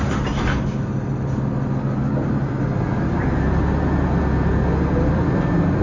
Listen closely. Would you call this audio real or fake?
real